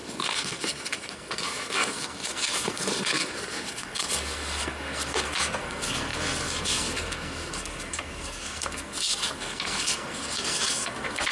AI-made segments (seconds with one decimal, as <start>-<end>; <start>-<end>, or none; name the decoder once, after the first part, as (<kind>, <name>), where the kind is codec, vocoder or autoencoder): 0.0-11.3 (codec, SNAC)